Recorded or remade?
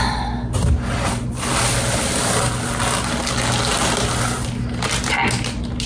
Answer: recorded